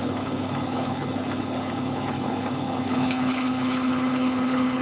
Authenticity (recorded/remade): remade